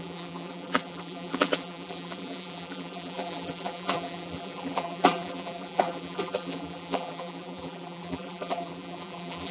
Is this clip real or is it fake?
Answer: fake